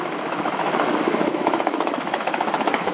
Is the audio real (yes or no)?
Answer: no